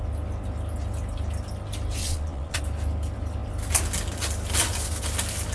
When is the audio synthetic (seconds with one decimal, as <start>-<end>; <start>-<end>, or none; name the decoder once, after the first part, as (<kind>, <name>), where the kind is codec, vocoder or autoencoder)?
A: 2.0-2.6 (vocoder, Vocos)